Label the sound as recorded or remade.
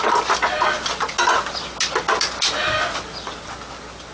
recorded